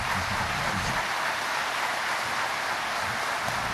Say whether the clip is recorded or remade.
recorded